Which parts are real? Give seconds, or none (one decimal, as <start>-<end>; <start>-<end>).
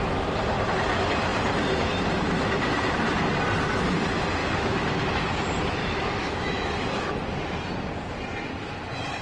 0.0-4.4; 5.1-5.8; 7.1-9.2